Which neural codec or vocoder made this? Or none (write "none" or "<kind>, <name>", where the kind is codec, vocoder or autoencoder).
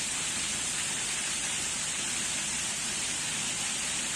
none